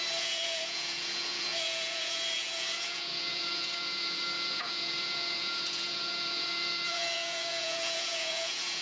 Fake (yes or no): yes